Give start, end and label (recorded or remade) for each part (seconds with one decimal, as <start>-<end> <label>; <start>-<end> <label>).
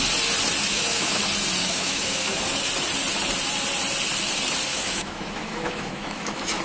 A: 0.0-0.7 recorded; 0.7-1.2 remade; 1.2-1.6 recorded; 1.6-2.4 remade; 2.4-4.7 recorded; 4.7-6.6 remade